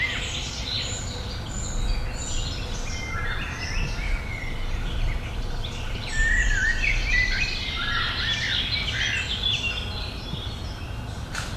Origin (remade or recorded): recorded